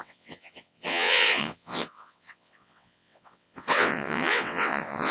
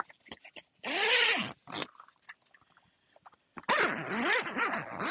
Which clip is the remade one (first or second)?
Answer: first